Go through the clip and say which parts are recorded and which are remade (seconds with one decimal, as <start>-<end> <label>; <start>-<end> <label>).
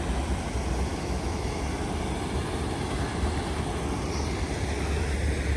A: 0.0-0.9 recorded; 0.9-1.6 remade; 1.6-5.6 recorded